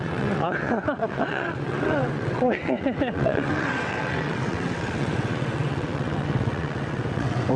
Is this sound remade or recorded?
remade